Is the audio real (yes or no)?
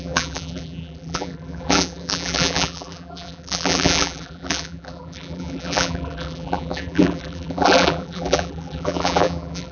no